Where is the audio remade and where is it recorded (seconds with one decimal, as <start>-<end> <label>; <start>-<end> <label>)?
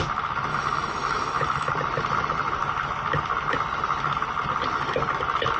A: 0.0-0.5 recorded; 0.5-1.7 remade; 1.7-5.6 recorded